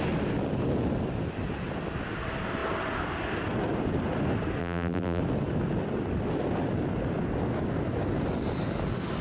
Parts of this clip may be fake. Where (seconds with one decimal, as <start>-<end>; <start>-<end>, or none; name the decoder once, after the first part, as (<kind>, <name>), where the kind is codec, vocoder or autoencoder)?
4.6-5.2 (vocoder, BigVGAN v2)